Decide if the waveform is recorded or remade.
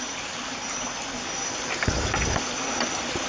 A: recorded